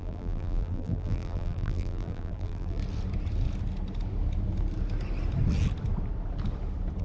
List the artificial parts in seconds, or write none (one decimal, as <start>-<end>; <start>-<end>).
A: 0.0-2.8